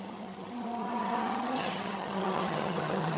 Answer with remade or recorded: remade